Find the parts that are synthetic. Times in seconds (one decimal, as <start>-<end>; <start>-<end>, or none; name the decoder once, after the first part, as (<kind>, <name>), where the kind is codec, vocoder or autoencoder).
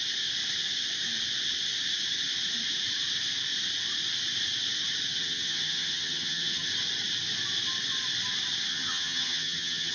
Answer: 5.1-6.7 (vocoder, HiFi-GAN); 8.7-9.9